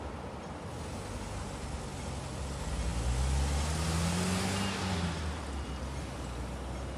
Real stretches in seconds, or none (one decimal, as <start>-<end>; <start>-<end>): 0.0-7.0